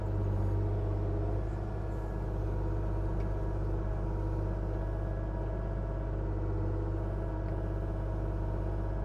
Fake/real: real